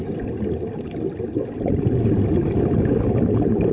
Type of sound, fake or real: real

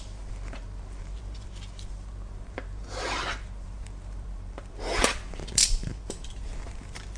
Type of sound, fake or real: fake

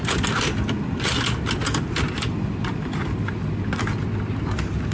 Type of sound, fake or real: real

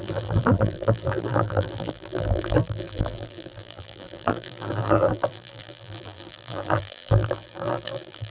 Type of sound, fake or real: fake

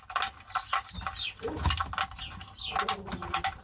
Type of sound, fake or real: real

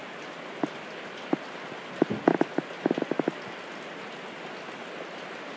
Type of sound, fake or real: real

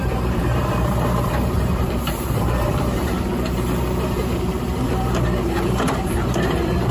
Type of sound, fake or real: fake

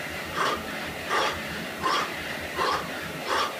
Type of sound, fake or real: fake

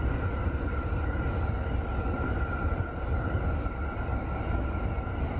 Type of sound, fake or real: real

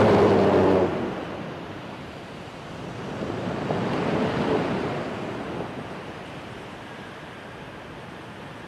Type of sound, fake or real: real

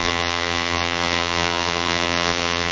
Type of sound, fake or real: fake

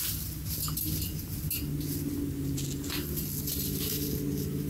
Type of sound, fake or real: real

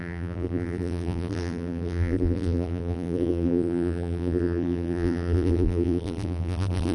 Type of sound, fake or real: fake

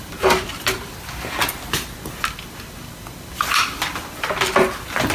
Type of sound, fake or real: real